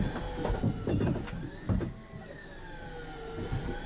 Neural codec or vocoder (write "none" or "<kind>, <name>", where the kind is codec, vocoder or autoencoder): none